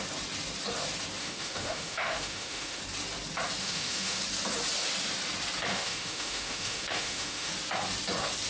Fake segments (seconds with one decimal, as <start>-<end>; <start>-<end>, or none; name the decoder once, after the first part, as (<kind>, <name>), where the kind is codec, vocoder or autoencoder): 1.2-2.8 (autoencoder, DAC-VAE); 3.6-4.2; 5.7-7.5